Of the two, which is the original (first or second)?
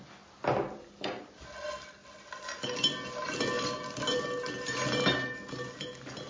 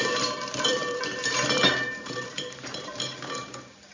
first